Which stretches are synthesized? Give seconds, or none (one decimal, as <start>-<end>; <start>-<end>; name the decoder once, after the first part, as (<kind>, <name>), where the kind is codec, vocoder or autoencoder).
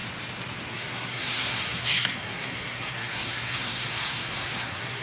0.7-5.0 (codec, SNAC)